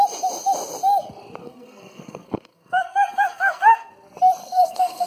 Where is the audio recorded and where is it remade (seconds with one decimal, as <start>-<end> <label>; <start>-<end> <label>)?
0.0-1.4 recorded; 1.4-3.9 remade; 3.9-4.4 recorded; 4.4-5.1 remade